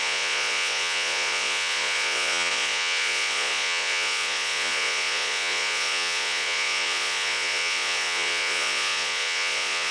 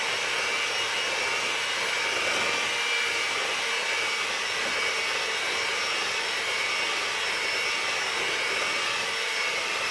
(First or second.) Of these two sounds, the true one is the second